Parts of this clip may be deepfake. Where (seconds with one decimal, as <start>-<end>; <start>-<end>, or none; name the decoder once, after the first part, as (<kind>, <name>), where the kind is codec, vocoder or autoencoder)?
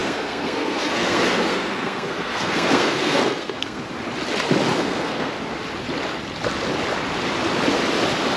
0.0-3.8 (codec, SNAC); 4.7-5.3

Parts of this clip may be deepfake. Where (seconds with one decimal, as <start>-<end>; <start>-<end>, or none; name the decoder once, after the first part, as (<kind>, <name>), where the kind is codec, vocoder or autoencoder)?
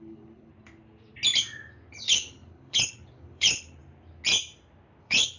0.0-0.5 (codec, HILCodec); 1.9-3.8; 5.0-5.4